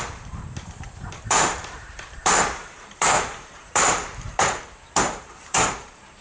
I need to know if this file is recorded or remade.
remade